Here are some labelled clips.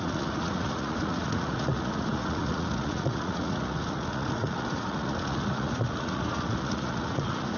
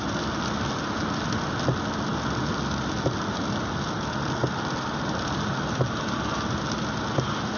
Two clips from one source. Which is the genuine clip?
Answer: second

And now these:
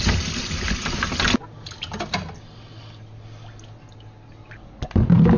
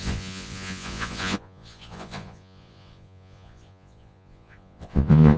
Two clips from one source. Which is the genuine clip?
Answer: first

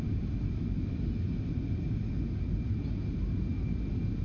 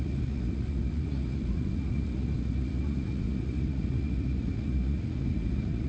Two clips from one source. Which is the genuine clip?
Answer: first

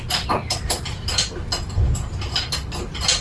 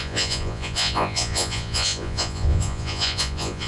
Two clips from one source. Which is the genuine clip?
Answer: first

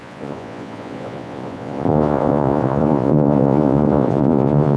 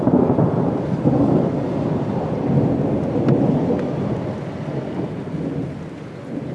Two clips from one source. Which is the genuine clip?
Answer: second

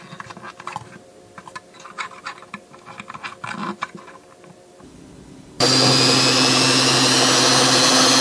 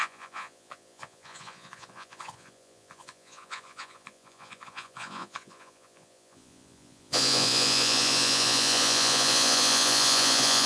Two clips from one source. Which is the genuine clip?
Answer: first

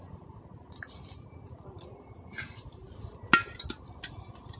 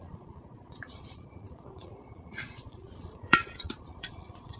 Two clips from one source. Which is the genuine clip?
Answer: first